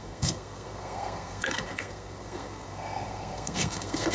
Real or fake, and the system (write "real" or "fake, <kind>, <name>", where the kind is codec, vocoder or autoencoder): fake, codec, SNAC